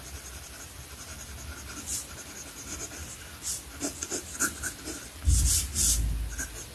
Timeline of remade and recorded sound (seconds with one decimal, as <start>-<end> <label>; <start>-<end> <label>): 0.0-1.9 remade; 1.9-5.4 recorded; 5.4-6.7 remade